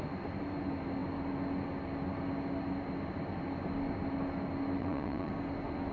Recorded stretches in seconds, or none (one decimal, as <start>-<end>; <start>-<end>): 0.0-4.8; 5.3-5.9